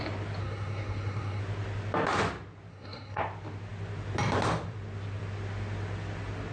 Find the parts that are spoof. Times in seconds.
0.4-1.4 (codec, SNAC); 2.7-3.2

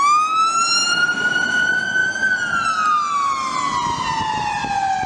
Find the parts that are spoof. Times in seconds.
none